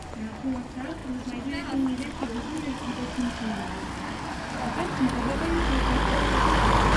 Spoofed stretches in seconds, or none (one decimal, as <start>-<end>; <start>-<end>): none